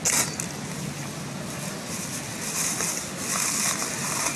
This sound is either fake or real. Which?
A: real